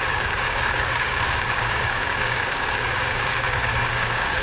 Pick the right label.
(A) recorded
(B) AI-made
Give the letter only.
B